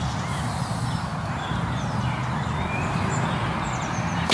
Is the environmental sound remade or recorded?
recorded